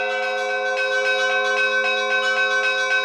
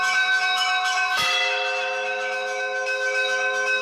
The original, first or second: first